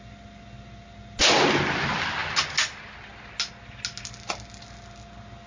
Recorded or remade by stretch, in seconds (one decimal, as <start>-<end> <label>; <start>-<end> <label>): 0.0-5.5 recorded